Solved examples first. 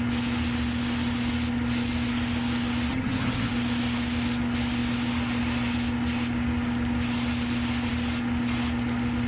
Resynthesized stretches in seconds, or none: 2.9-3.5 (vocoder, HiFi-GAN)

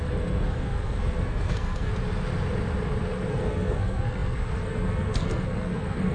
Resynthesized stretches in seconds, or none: 0.0-1.9 (codec, SNAC); 3.3-6.1

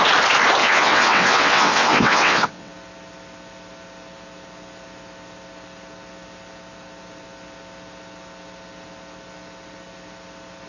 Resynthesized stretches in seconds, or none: 0.6-2.7 (vocoder, WaveNeXt)